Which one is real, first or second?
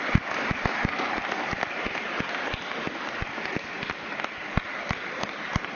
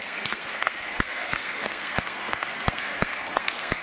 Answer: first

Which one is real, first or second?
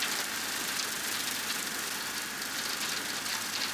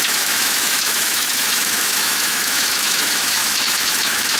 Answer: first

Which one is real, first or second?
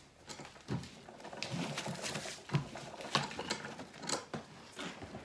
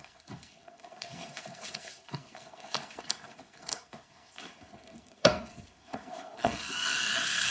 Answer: first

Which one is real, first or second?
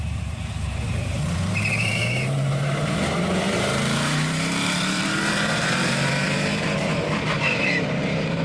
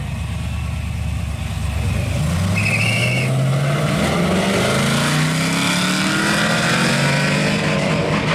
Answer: second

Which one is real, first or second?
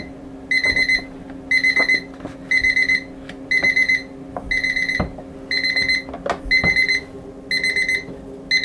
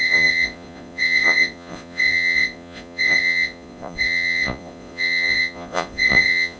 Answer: first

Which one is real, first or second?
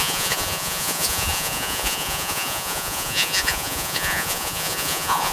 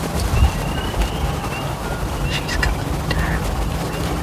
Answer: second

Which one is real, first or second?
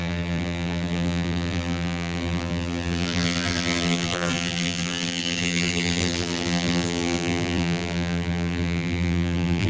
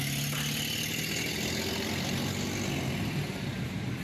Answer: second